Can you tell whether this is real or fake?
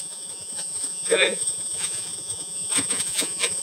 fake